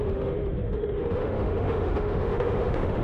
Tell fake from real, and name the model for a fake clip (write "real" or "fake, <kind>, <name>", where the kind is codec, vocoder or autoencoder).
fake, autoencoder, DAC-VAE